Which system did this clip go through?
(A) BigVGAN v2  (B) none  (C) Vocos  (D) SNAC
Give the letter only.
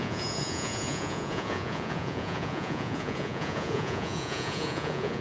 C